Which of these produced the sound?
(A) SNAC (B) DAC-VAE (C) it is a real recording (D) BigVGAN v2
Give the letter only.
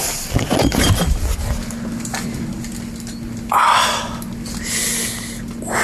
C